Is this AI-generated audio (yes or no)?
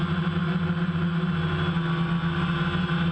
no